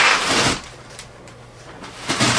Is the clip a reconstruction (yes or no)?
yes